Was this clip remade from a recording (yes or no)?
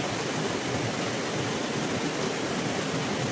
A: no